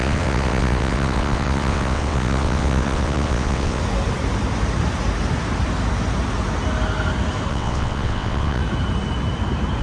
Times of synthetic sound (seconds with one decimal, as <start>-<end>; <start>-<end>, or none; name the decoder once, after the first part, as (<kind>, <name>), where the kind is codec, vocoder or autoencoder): 0.0-3.8 (vocoder, WaveNeXt); 7.5-8.6

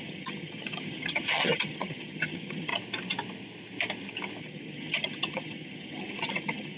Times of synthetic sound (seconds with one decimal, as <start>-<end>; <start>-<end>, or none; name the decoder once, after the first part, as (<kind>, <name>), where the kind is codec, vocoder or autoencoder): 0.0-2.7 (vocoder, HiFi-GAN); 4.4-6.8

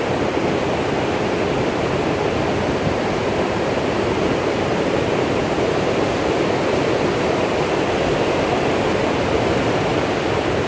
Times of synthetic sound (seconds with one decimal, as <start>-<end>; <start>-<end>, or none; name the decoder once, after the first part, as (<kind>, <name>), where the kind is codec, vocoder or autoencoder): none

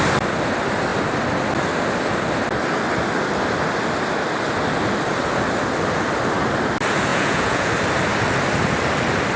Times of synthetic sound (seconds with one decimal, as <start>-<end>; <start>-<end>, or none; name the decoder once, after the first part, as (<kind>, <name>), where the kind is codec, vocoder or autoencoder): 7.1-7.7 (vocoder, Vocos)

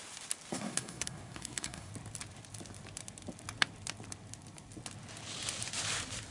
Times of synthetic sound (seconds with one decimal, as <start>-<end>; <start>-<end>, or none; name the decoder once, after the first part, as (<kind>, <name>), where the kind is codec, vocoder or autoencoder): 0.5-1.9 (codec, SNAC)